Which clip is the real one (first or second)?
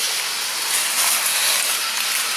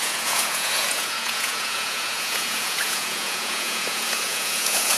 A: first